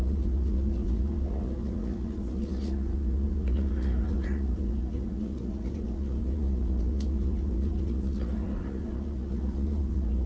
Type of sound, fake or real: fake